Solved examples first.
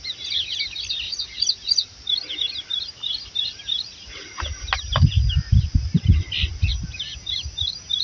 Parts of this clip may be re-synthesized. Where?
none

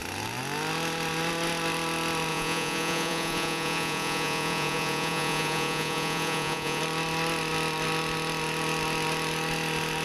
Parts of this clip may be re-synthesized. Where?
2.3-6.8

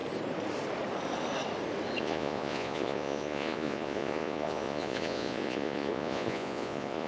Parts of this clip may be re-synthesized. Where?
2.0-7.1